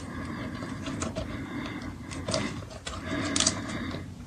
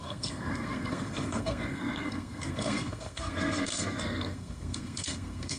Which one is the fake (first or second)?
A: second